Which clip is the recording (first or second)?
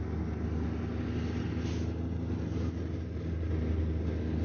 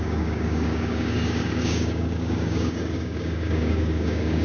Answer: first